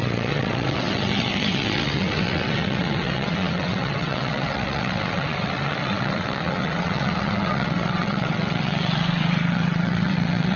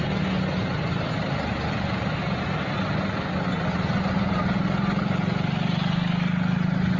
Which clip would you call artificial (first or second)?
first